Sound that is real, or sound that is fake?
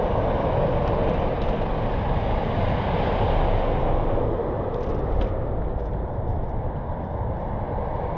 real